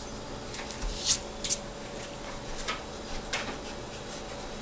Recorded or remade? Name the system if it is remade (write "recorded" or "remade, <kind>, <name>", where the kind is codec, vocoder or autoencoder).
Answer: recorded